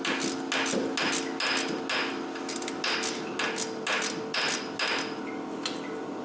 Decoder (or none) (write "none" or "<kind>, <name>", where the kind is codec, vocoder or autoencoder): none